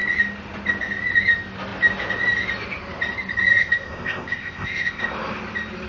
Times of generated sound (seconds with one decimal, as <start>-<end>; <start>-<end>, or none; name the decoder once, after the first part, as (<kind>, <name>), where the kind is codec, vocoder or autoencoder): 3.6-5.1 (codec, ZipCodec)